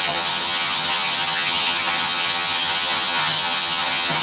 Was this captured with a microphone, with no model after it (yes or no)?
no